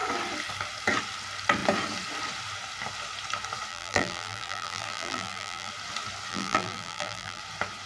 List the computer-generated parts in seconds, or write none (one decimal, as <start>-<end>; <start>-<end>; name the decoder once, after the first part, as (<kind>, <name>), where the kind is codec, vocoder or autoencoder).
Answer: 3.7-5.7 (vocoder, BigVGAN v2); 6.3-7.4